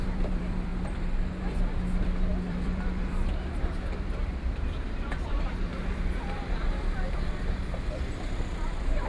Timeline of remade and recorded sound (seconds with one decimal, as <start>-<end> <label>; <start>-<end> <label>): 0.0-0.7 remade; 0.7-1.4 recorded; 1.4-9.1 remade